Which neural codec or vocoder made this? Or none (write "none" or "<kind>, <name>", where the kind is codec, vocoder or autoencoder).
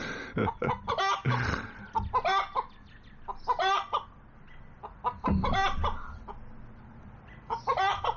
none